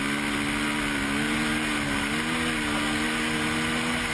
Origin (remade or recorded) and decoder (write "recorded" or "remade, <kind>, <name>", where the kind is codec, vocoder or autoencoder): recorded